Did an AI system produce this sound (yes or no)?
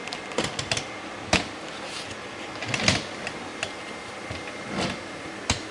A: no